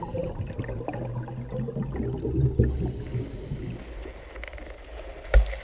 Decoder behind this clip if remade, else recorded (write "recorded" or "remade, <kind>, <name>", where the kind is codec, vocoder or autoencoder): recorded